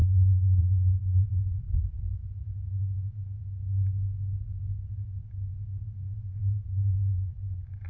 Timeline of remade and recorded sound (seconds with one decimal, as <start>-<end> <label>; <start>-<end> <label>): 0.0-0.6 recorded; 0.6-2.2 remade; 2.2-6.4 recorded; 6.4-7.9 remade